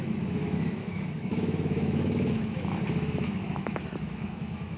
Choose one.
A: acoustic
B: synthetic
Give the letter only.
B